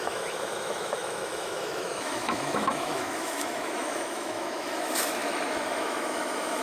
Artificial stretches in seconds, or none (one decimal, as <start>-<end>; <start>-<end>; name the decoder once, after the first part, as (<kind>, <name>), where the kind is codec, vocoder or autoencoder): 0.0-6.6 (autoencoder, DAC-VAE)